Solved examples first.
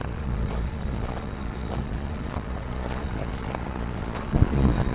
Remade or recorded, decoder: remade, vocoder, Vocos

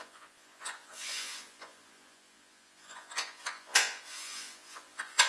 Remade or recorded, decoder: remade, vocoder, Vocos